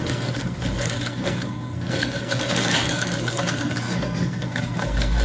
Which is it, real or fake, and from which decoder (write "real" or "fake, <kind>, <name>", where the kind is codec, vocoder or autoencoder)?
fake, codec, SNAC